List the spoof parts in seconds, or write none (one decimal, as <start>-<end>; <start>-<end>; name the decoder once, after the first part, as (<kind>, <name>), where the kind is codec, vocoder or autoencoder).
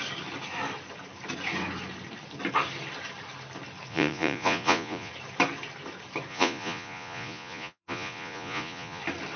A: 3.9-5.1 (vocoder, Vocos); 6.3-9.0